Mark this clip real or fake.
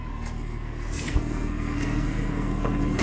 fake